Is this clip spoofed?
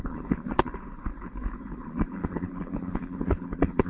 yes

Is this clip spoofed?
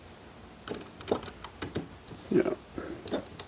no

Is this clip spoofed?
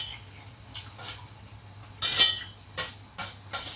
no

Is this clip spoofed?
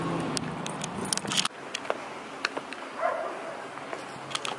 no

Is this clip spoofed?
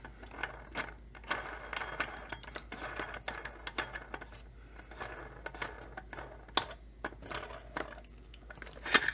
no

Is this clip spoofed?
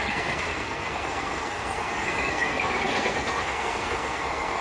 yes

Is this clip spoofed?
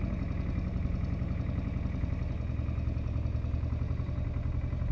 no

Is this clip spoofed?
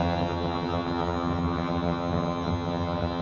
yes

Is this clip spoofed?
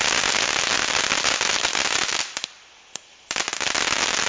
no